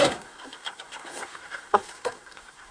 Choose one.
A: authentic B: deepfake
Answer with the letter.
B